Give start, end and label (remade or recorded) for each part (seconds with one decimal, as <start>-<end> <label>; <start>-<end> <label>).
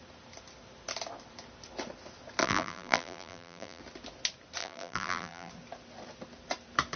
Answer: 0.0-2.4 recorded; 2.4-3.8 remade; 3.8-4.6 recorded; 4.6-5.5 remade; 5.5-7.0 recorded